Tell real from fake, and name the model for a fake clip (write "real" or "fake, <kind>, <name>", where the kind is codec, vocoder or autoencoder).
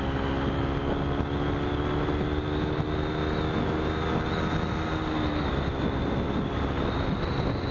real